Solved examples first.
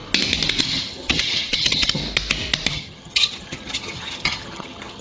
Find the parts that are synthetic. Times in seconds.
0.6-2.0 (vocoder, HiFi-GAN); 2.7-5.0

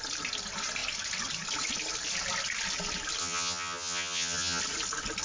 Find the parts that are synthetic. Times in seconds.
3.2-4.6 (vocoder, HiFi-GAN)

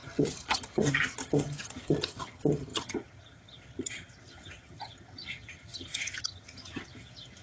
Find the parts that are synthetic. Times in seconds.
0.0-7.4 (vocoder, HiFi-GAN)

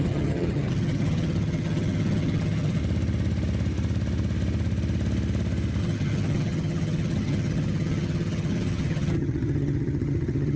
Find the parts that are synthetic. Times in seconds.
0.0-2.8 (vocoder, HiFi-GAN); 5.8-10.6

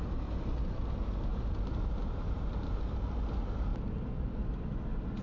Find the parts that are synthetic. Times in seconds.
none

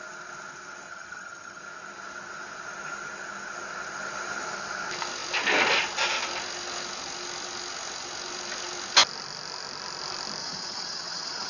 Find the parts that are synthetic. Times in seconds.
0.9-1.6 (vocoder, HiFi-GAN); 10.4-11.5